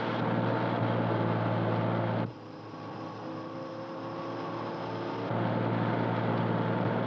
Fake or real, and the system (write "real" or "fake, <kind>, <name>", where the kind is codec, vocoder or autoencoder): real